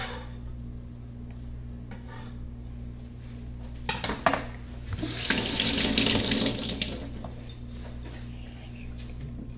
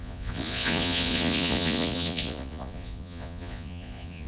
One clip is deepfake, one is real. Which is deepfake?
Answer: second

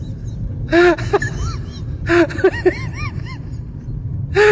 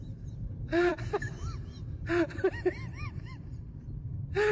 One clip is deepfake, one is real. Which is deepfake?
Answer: second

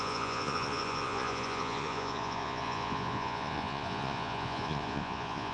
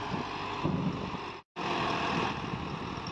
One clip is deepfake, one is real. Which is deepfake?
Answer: first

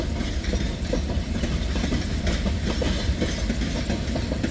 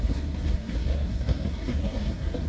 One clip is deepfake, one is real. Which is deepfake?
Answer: second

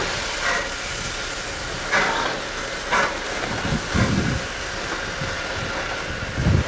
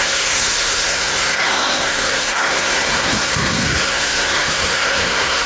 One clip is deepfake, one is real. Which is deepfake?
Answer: second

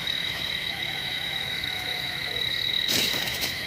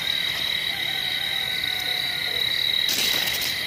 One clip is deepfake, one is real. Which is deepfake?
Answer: first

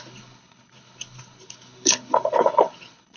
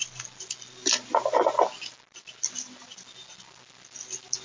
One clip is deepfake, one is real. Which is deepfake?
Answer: first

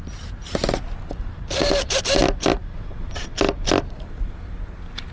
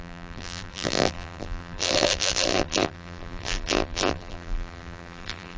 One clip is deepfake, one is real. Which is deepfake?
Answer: second